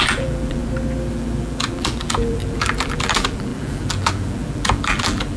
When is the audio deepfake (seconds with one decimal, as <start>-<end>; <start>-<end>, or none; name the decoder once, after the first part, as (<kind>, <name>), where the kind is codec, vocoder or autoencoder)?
0.0-0.6 (vocoder, BigVGAN v2); 1.1-5.4